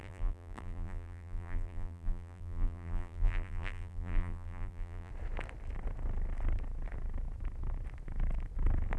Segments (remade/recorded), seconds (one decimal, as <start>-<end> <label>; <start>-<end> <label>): 0.0-5.1 remade; 5.1-9.0 recorded